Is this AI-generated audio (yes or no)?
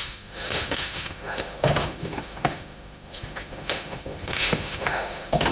yes